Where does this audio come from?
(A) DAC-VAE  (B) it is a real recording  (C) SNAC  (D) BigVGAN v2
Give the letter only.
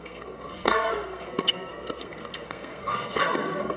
C